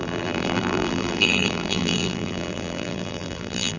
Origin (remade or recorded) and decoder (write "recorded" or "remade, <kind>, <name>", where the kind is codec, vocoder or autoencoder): remade, vocoder, BigVGAN v2